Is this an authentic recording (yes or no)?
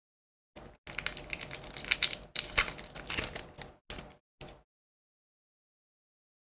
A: yes